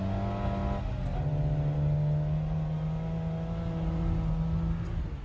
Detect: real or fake real